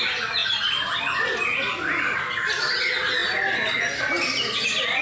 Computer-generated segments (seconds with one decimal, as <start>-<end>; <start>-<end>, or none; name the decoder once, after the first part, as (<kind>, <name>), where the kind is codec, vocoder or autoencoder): none